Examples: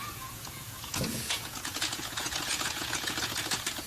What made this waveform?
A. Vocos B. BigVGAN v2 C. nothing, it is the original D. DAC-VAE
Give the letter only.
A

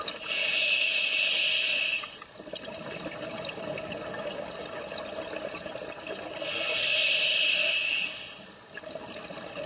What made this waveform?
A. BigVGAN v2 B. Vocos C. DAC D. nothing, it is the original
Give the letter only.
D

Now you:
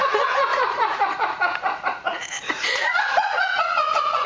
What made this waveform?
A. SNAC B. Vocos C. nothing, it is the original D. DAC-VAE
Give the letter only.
B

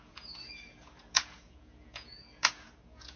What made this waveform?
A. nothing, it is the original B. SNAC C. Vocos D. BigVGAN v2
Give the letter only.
C